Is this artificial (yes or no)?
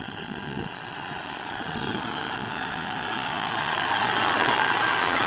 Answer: yes